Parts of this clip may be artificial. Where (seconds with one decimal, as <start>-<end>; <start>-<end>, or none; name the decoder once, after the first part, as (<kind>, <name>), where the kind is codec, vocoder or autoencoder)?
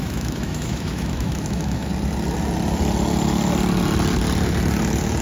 0.0-1.9 (autoencoder, DAC-VAE)